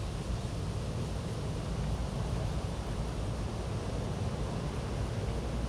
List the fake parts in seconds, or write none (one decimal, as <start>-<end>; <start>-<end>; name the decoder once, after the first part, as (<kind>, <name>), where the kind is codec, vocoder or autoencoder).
2.0-5.1 (vocoder, BigVGAN v2)